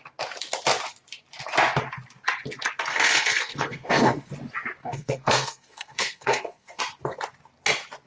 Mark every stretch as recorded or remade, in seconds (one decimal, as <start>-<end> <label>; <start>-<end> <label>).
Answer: 0.0-2.9 recorded; 2.9-4.3 remade; 4.3-4.8 recorded; 4.8-6.8 remade; 6.8-8.1 recorded